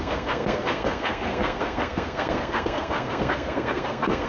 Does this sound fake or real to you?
fake